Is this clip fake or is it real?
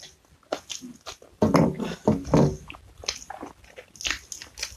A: real